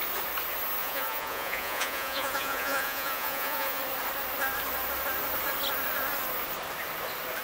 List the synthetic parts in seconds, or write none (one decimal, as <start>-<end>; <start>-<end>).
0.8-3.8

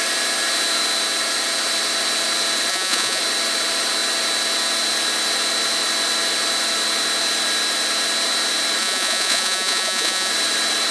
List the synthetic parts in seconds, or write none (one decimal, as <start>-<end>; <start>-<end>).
2.7-3.2; 8.8-10.3

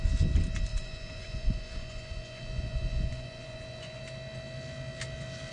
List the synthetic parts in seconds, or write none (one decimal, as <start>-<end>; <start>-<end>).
0.7-4.0